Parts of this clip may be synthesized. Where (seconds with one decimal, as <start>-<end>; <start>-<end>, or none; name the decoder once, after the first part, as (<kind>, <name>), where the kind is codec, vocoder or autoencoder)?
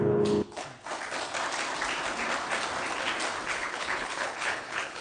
0.0-0.7 (codec, HILCodec); 3.5-5.0